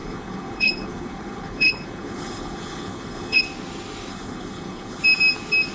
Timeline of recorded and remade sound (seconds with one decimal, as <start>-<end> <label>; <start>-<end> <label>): 0.0-3.4 remade; 3.4-4.1 recorded; 4.1-5.0 remade; 5.0-5.7 recorded